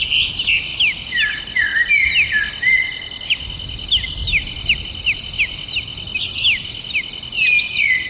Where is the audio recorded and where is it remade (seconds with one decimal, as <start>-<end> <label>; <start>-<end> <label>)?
0.0-8.1 recorded